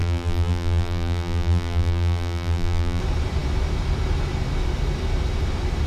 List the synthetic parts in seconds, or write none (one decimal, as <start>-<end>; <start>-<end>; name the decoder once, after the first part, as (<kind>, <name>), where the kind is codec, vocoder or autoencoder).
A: 0.0-3.0 (vocoder, BigVGAN v2)